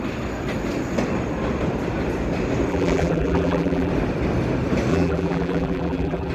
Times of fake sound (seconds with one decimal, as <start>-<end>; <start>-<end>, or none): 2.7-3.9; 4.9-6.3